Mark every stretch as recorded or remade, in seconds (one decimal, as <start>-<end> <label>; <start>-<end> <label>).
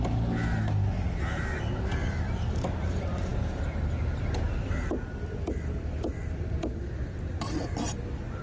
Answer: 0.0-8.4 recorded